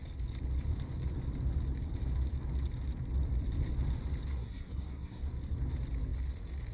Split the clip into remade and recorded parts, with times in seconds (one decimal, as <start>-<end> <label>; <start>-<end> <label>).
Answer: 0.0-4.3 recorded; 4.3-5.2 remade; 5.2-6.7 recorded